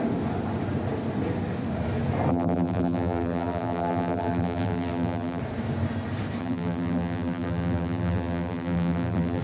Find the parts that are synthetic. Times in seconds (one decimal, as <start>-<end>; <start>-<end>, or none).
2.3-5.4; 6.4-9.4

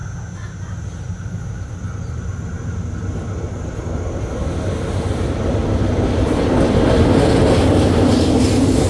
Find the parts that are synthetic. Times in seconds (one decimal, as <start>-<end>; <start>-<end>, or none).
5.8-7.7

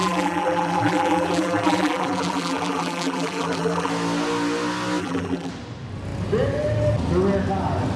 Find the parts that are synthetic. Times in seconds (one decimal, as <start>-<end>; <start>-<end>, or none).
0.0-3.9; 5.0-5.5